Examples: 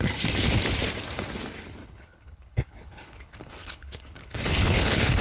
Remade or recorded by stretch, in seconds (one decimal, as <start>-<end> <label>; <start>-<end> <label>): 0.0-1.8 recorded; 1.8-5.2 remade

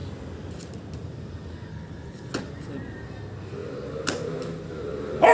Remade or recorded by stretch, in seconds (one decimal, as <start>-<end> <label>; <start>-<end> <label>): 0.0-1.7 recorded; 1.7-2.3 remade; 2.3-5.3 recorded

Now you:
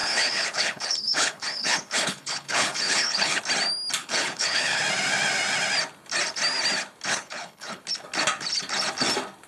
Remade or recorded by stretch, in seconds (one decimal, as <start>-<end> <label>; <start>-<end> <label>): 0.0-3.4 remade; 3.4-4.0 recorded; 4.0-4.8 remade; 4.8-7.1 recorded; 7.1-7.8 remade; 7.8-9.5 recorded